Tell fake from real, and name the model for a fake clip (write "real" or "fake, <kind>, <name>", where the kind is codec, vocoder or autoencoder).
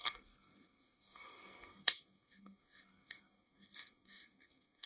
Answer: fake, codec, SNAC